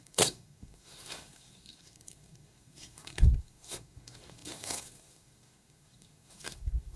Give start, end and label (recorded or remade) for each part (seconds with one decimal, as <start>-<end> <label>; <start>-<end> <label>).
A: 0.0-7.0 remade